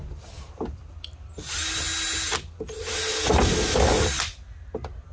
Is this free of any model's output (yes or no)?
yes